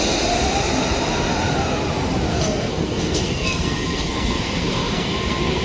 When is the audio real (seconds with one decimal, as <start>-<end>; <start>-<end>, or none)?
0.0-2.3